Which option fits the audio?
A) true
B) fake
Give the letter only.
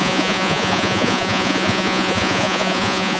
B